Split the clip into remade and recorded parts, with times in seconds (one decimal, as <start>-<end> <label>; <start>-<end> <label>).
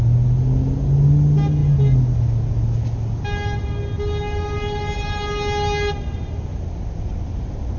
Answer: 0.0-7.8 recorded